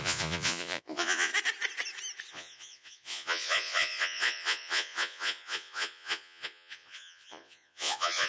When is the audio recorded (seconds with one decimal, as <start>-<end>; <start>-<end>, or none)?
1.3-2.3